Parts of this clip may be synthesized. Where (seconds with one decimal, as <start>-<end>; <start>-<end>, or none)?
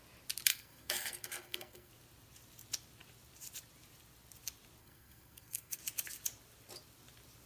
0.5-1.9; 4.8-5.8